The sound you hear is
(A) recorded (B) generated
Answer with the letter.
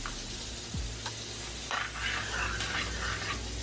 A